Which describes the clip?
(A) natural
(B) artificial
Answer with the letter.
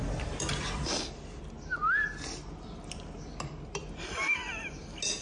A